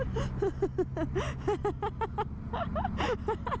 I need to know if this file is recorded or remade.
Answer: recorded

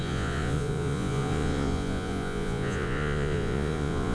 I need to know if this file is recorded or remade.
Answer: remade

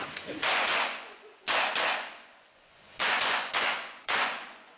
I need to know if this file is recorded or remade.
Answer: remade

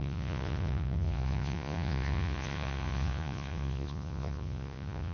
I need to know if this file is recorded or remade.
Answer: remade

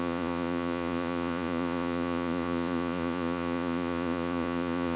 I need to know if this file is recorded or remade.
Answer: remade